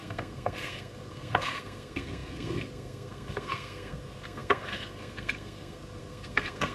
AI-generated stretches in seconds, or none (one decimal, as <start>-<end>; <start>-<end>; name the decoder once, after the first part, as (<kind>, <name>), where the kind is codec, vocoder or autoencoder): 0.0-6.7 (codec, SNAC)

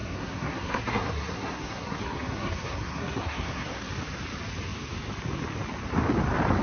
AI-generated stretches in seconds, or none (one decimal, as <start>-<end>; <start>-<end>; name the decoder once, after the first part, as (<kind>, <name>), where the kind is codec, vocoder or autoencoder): 0.0-3.9 (codec, SNAC)

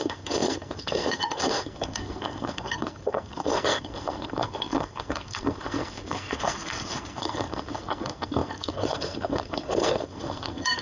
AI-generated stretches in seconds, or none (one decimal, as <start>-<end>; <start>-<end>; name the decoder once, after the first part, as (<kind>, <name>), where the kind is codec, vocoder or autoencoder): 0.0-10.8 (codec, SNAC)